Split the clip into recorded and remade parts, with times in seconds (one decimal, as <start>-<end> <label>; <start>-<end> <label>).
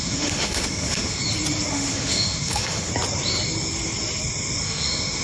0.0-1.2 remade; 1.2-1.7 recorded; 1.7-2.9 remade; 2.9-4.6 recorded; 4.6-5.2 remade